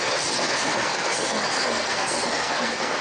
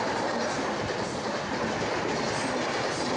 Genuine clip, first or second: second